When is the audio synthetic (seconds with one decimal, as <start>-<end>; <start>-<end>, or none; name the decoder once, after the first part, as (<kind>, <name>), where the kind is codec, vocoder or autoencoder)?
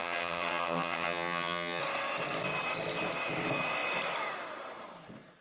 0.0-1.8 (vocoder, HiFi-GAN)